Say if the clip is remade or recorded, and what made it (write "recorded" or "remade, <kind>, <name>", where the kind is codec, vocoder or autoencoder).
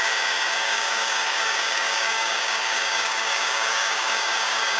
remade, codec, DAC